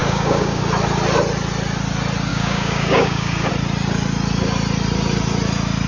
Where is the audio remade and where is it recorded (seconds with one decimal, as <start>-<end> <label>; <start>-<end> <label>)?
0.0-0.6 remade; 0.6-2.3 recorded; 2.3-3.5 remade; 3.5-5.9 recorded